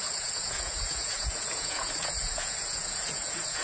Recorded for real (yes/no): no